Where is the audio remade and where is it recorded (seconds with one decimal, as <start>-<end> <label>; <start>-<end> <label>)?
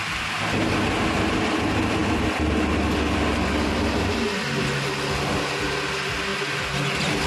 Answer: 0.0-7.3 recorded